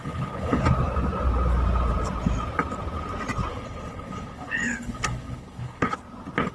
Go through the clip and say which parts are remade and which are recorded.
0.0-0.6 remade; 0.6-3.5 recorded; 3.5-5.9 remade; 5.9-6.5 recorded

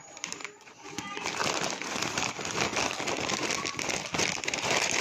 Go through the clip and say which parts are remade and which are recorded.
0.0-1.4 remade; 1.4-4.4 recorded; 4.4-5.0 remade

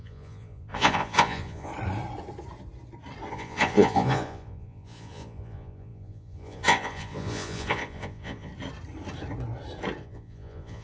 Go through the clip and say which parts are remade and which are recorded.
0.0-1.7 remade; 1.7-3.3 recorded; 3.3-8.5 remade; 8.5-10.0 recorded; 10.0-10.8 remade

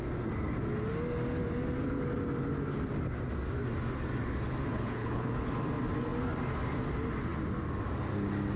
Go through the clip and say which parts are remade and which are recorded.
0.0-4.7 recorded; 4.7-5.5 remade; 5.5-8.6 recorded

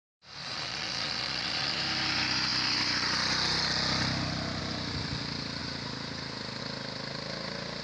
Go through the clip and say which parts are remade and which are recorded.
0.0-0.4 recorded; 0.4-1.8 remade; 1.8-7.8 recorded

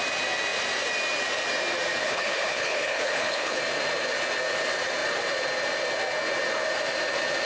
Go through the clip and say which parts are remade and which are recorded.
0.0-2.0 recorded; 2.0-3.6 remade; 3.6-7.5 recorded

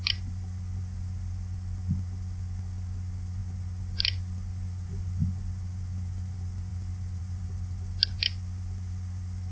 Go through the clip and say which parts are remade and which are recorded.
0.0-9.5 recorded